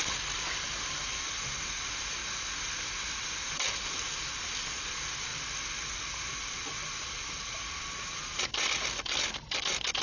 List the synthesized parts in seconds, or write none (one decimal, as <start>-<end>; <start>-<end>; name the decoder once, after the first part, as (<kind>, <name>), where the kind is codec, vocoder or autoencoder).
none